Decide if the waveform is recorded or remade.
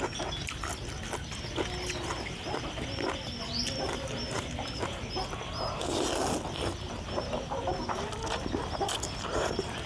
recorded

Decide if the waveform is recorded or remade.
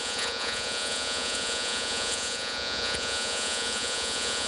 remade